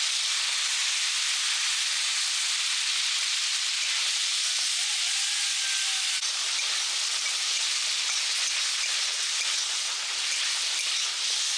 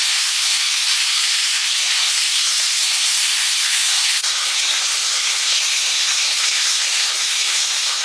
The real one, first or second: first